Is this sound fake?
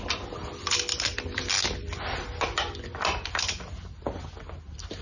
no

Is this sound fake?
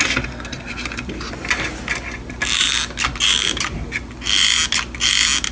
no